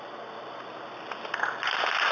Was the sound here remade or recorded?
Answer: recorded